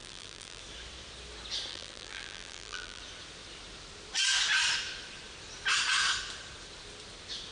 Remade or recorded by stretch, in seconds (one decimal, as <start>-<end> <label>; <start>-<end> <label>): 0.0-0.6 remade; 0.6-1.7 recorded; 1.7-3.0 remade; 3.0-7.5 recorded